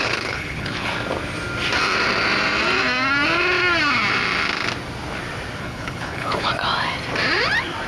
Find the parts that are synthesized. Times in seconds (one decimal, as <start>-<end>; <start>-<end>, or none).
0.0-0.9; 5.6-6.5